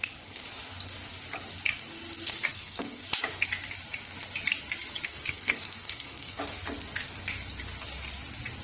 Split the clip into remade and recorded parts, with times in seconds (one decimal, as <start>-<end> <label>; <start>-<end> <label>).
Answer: 0.0-2.5 recorded; 2.5-3.0 remade; 3.0-5.1 recorded; 5.1-6.4 remade; 6.4-8.6 recorded

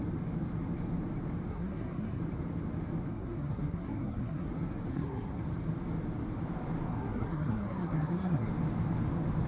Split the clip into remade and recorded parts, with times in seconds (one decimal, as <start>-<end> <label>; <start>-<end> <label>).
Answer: 0.0-1.5 recorded; 1.5-2.2 remade; 2.2-3.1 recorded; 3.1-4.5 remade; 4.5-4.9 recorded; 4.9-5.4 remade; 5.4-6.9 recorded; 6.9-8.5 remade; 8.5-9.5 recorded

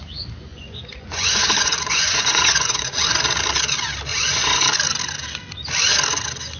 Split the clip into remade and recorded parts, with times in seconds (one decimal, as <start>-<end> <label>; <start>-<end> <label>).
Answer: 0.0-0.5 recorded; 0.5-3.2 remade; 3.2-4.1 recorded; 4.1-4.6 remade; 4.6-6.6 recorded

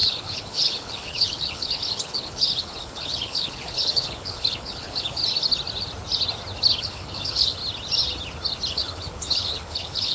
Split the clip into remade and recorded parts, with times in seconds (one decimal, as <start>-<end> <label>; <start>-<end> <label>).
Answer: 0.0-5.2 remade; 5.2-6.8 recorded; 6.8-7.6 remade; 7.6-8.7 recorded; 8.7-10.1 remade

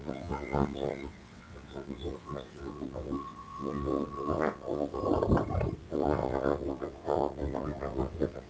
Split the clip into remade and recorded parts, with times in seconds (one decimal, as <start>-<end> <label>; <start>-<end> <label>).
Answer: 0.0-5.0 remade; 5.0-5.8 recorded; 5.8-8.5 remade

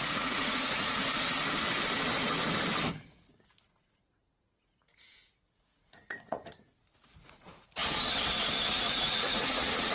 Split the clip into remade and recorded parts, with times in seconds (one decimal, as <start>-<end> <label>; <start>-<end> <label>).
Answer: 0.0-1.0 remade; 1.0-3.1 recorded; 3.1-7.8 remade; 7.8-8.8 recorded; 8.8-9.9 remade

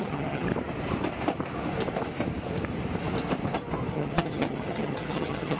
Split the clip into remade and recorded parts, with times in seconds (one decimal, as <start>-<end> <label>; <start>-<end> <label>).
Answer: 0.0-0.5 remade; 0.5-3.9 recorded; 3.9-5.6 remade